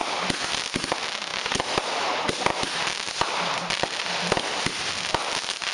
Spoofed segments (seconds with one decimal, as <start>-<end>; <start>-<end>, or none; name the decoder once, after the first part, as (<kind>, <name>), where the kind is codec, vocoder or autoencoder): none